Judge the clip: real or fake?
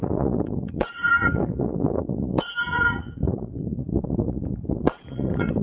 fake